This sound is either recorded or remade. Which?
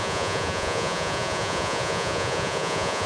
remade